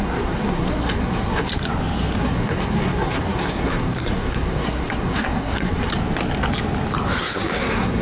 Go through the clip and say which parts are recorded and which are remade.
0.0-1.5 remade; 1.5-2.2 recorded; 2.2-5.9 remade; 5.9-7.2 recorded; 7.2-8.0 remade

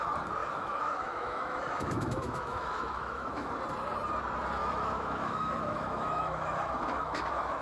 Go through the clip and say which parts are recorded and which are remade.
0.0-0.4 recorded; 0.4-3.5 remade; 3.5-4.6 recorded; 4.6-7.6 remade